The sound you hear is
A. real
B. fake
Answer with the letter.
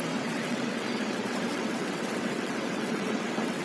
B